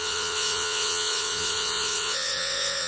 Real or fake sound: fake